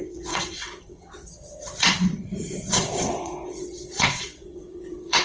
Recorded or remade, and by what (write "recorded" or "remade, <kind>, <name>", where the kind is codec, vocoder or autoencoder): remade, vocoder, WaveNeXt